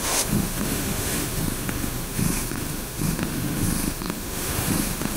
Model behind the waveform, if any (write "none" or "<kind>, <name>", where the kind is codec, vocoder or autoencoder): autoencoder, DAC-VAE